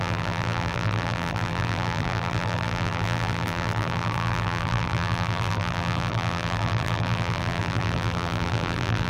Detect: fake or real fake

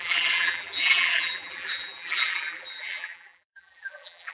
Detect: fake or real fake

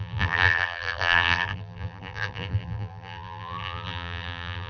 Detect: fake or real fake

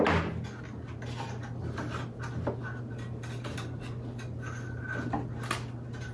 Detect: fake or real real